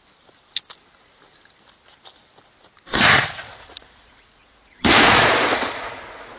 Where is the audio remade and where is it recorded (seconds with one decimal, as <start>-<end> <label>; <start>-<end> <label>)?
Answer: 0.0-3.5 recorded; 3.5-6.4 remade